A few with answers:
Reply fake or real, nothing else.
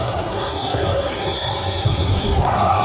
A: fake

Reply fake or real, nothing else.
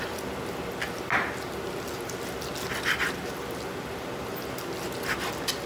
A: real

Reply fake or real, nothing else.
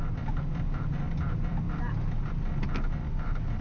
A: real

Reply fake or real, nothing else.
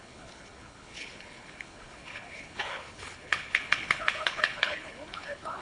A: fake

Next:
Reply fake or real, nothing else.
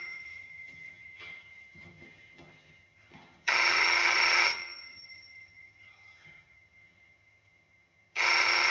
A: fake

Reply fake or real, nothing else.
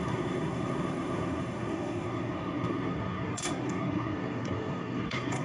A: fake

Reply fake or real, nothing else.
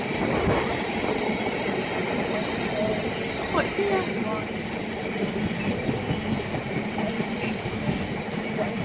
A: real